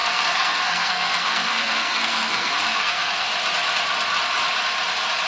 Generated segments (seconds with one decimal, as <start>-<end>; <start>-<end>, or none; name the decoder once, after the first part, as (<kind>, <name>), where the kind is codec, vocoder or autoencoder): 0.0-3.3 (codec, SNAC)

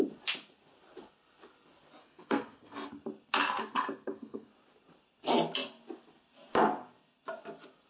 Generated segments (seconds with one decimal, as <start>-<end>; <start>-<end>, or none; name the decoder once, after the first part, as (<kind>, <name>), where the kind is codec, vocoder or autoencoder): 2.0-2.9 (codec, SNAC); 3.6-4.5

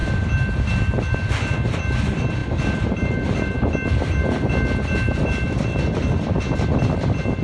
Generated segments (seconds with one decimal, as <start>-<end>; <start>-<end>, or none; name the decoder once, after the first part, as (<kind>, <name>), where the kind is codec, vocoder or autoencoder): none

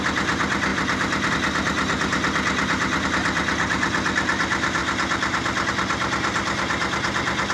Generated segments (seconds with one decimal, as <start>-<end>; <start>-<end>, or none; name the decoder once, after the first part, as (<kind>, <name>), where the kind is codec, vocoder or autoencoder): none